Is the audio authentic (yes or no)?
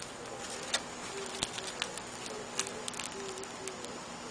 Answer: yes